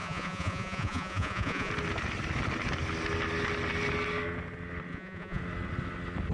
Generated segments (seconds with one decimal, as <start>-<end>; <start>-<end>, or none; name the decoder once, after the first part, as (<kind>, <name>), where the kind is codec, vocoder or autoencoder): 0.0-1.7 (vocoder, Vocos); 4.9-5.4